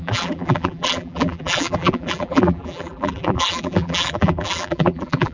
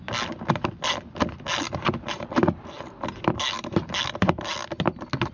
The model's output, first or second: first